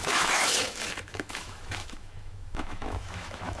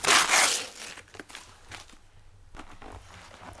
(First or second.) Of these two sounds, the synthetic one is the first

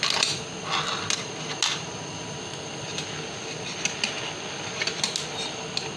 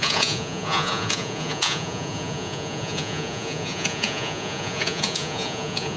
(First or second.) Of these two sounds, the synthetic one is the second